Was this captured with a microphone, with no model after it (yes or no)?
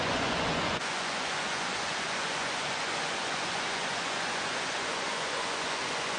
no